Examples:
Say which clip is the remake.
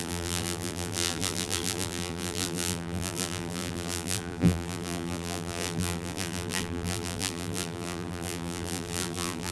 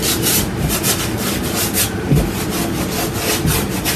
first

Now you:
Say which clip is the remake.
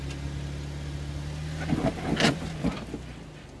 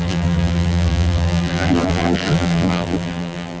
second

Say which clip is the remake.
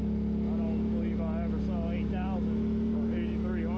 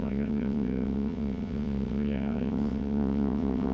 second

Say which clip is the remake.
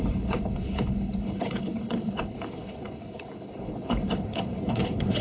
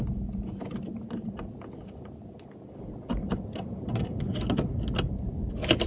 first